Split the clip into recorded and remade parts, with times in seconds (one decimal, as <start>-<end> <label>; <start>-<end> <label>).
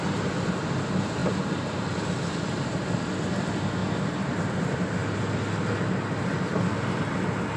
0.0-1.2 recorded; 1.2-2.4 remade; 2.4-7.6 recorded